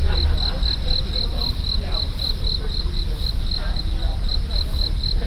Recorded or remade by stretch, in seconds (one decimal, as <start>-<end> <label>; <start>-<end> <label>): 0.0-5.3 recorded